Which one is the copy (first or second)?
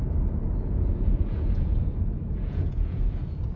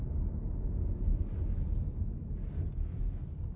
first